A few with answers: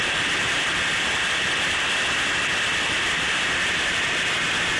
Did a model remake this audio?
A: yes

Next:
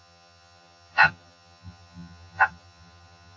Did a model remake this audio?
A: yes